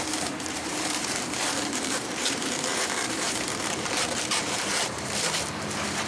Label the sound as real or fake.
fake